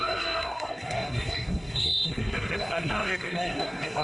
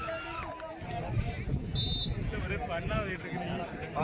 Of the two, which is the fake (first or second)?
first